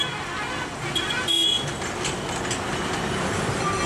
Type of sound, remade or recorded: recorded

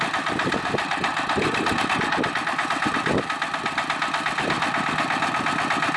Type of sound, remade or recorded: recorded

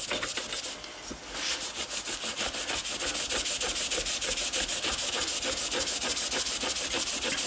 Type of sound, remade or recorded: recorded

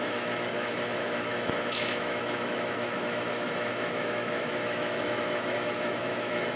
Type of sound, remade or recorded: remade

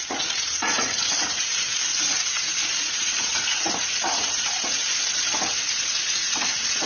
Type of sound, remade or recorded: remade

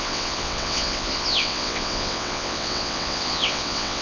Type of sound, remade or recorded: remade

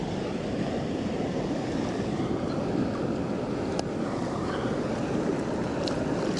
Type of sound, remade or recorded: recorded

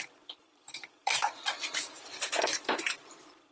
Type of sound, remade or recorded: remade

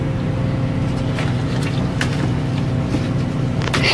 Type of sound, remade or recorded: recorded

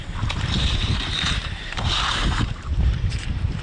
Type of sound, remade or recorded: remade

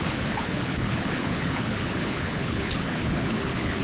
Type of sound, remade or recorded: remade